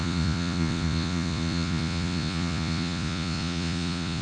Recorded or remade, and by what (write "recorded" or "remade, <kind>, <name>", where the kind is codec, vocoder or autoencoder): remade, vocoder, Vocos